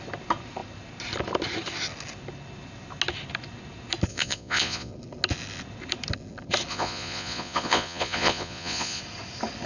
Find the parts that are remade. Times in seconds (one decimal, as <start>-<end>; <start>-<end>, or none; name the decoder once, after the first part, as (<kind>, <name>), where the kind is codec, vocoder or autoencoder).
4.1-4.9 (vocoder, Vocos); 6.7-9.0